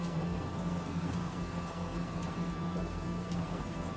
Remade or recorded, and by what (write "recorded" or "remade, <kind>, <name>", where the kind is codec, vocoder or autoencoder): remade, codec, SNAC